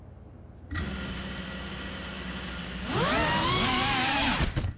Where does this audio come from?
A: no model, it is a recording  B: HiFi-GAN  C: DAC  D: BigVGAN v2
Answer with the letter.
A